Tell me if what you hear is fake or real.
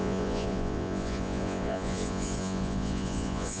fake